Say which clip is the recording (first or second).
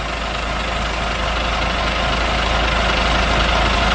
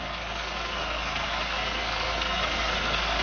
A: first